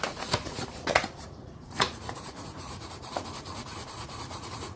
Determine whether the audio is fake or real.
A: fake